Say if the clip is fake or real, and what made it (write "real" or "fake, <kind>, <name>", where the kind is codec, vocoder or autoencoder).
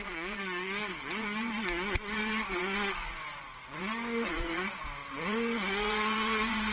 fake, vocoder, Vocos